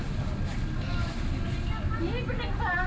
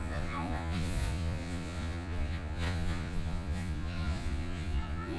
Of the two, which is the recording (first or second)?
first